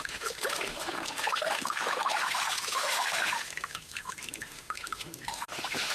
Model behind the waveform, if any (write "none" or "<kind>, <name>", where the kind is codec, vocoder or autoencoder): autoencoder, DAC-VAE